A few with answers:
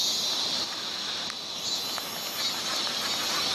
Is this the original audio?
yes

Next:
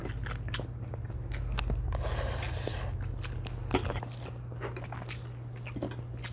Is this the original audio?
yes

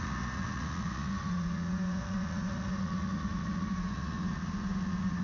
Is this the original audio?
no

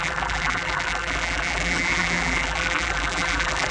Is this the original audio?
no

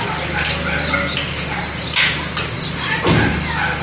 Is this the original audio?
yes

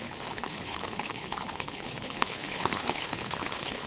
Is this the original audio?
no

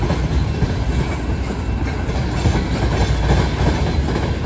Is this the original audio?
yes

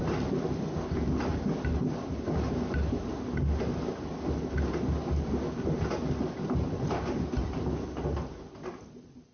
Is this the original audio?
yes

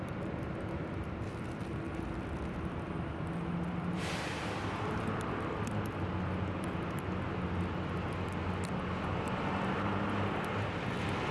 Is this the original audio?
yes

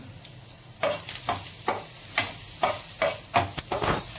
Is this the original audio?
yes